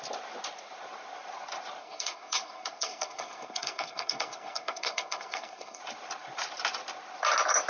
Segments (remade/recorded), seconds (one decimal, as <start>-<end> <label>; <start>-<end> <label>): 0.0-1.8 recorded; 1.8-5.8 remade; 5.8-7.7 recorded